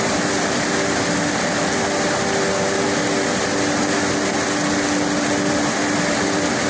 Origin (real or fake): real